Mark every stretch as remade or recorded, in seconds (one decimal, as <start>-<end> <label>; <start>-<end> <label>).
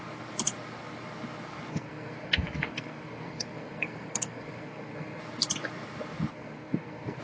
0.0-1.7 recorded; 1.7-5.2 remade; 5.2-6.3 recorded; 6.3-7.2 remade